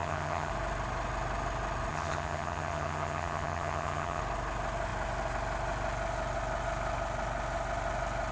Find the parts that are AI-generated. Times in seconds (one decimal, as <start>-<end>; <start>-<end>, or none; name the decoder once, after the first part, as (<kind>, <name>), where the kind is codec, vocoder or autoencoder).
0.0-0.5 (vocoder, HiFi-GAN); 1.9-4.2